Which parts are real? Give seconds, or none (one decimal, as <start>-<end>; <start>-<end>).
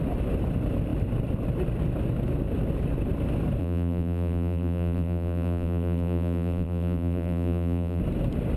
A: 0.0-3.6; 8.0-8.6